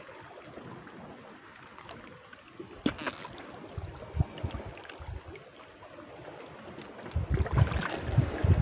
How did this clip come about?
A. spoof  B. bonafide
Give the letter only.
B